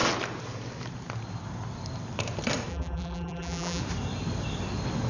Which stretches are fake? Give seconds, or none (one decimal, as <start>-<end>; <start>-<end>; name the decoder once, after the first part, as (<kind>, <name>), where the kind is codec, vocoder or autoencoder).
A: 2.7-3.8 (vocoder, BigVGAN v2)